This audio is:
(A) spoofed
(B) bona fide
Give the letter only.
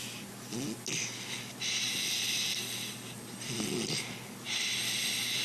B